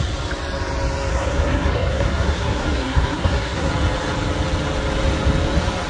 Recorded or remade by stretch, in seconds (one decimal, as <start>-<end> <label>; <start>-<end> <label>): 0.0-1.1 recorded; 1.1-3.7 remade; 3.7-5.9 recorded